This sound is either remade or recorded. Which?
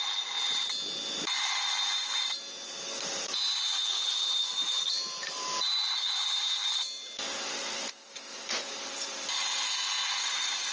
recorded